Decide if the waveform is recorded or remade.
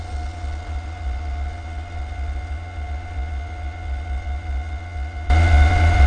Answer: remade